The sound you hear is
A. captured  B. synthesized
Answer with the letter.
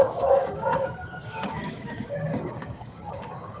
B